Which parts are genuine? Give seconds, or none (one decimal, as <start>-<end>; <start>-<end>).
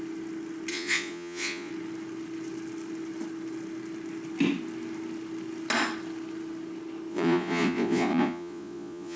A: 0.0-0.7; 1.7-7.1